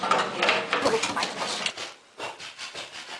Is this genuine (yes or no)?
yes